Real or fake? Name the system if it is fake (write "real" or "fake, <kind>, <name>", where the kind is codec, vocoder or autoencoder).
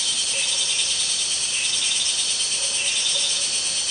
real